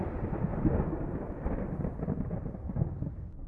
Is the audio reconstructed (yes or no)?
no